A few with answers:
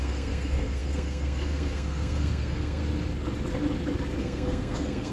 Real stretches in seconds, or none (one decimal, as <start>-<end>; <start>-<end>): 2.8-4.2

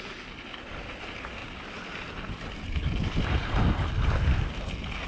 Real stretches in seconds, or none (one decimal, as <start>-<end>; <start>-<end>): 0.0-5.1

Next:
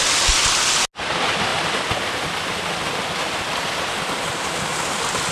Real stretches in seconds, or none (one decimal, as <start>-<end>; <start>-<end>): 0.0-5.3

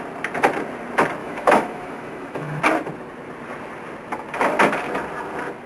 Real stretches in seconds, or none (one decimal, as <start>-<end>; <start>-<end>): 0.0-1.2; 2.6-5.7

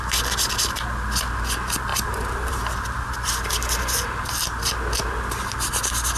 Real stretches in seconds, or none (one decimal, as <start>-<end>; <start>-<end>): 0.0-1.9; 2.6-6.2

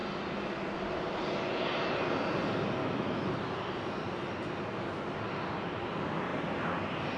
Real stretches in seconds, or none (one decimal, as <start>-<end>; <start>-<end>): 0.0-2.8; 3.3-7.2

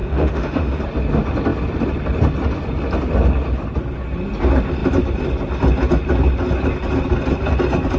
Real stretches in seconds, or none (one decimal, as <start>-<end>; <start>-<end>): 0.8-8.0

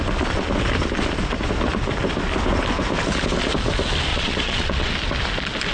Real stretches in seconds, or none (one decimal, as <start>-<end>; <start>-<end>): 0.0-4.1; 4.9-5.7